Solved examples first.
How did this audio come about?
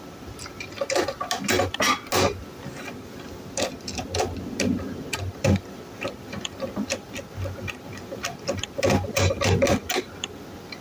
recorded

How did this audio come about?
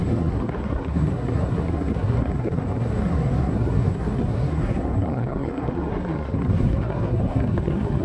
remade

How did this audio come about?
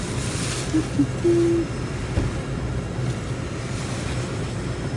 recorded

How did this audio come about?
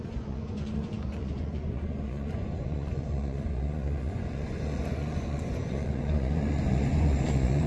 remade